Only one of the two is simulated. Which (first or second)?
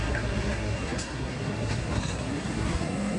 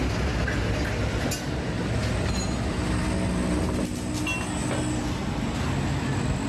first